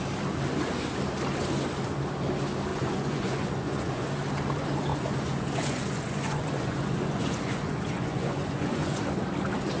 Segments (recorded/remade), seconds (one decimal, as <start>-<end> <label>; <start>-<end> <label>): 0.0-2.7 recorded; 2.7-4.1 remade; 4.1-4.9 recorded; 4.9-9.0 remade; 9.0-9.8 recorded